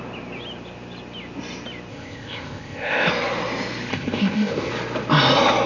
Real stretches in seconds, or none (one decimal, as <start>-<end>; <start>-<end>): 0.0-1.9; 3.1-3.9; 4.7-5.7